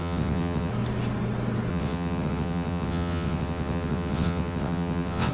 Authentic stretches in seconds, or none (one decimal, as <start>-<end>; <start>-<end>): 0.7-1.7